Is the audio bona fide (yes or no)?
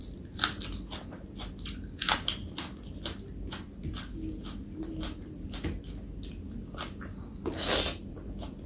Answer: yes